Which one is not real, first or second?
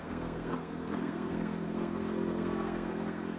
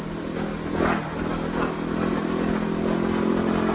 first